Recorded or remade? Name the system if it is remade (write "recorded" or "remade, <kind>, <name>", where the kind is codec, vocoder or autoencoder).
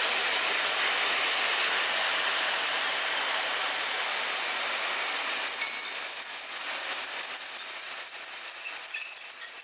recorded